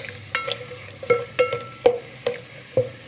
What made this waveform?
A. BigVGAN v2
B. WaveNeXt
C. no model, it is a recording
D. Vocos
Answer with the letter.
C